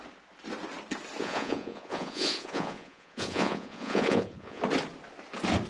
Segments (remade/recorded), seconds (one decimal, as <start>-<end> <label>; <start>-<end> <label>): 0.0-1.2 recorded; 1.2-4.6 remade; 4.6-5.7 recorded